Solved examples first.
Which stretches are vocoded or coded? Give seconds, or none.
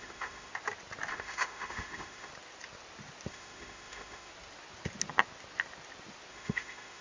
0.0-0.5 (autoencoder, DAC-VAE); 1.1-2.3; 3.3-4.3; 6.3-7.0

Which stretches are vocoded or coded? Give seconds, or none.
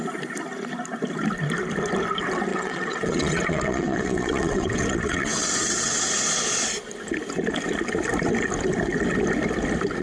2.5-6.0 (vocoder, WaveNeXt)